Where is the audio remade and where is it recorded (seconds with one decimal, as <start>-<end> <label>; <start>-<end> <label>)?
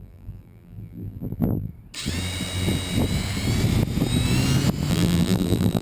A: 0.0-1.7 remade; 1.7-4.9 recorded; 4.9-5.8 remade